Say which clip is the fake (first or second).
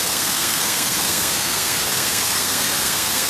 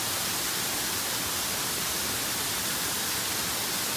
first